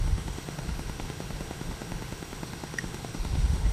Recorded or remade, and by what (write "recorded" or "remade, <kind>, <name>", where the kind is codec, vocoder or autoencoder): remade, autoencoder, DAC-VAE